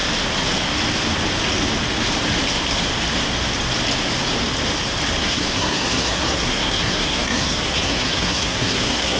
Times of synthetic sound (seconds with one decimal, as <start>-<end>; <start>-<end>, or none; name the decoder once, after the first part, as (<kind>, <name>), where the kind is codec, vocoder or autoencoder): 5.2-9.2 (codec, SNAC)